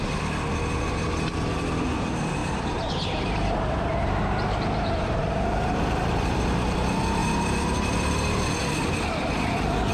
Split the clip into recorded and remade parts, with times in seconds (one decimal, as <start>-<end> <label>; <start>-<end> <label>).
0.0-2.4 recorded; 2.4-6.4 remade; 6.4-9.9 recorded

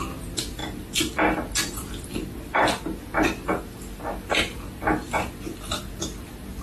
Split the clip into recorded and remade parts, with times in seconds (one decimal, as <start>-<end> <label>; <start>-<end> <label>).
0.0-6.6 recorded